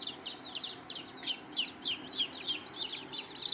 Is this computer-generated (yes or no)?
no